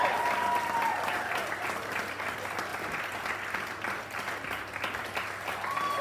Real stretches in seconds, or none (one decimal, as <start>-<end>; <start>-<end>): 0.0-1.4; 2.2-2.7; 3.3-6.0